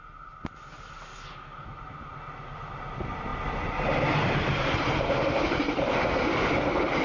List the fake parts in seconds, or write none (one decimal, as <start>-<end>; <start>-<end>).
none